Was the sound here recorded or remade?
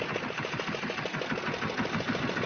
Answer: recorded